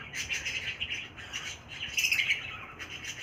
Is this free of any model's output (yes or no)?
yes